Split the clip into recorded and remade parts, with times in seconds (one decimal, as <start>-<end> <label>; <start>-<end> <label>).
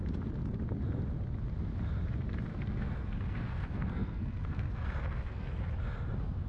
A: 0.0-2.5 recorded; 2.5-5.5 remade; 5.5-6.5 recorded